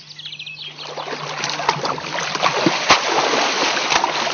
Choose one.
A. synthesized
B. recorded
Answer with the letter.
B